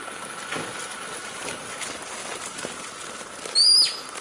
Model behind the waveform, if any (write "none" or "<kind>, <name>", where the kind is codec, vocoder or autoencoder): none